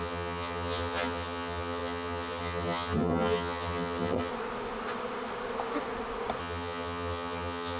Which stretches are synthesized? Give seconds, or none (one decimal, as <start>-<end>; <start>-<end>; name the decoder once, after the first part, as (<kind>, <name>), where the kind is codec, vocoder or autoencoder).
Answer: 0.0-4.3 (vocoder, HiFi-GAN); 6.4-7.8